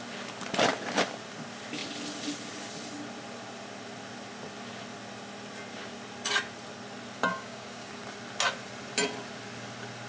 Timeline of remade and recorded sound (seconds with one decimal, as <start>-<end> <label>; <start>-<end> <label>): 0.0-7.3 recorded; 7.3-7.9 remade; 7.9-10.1 recorded